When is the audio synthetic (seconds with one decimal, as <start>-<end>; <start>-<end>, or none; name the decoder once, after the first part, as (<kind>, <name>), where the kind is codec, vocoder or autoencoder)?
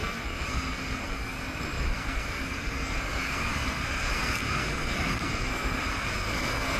0.0-6.8 (codec, SNAC)